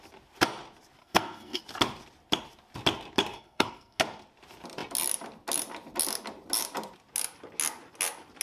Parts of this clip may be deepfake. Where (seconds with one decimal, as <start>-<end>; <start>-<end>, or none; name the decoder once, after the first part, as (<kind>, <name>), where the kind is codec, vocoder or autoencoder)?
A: 1.0-1.6 (codec, SNAC); 3.3-4.0